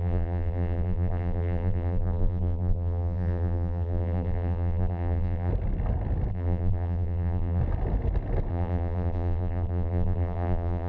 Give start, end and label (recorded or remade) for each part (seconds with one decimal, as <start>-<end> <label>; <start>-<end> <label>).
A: 0.0-5.5 remade; 5.5-6.3 recorded; 6.3-7.6 remade; 7.6-8.5 recorded; 8.5-10.9 remade